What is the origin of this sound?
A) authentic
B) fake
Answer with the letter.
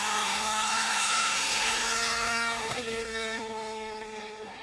B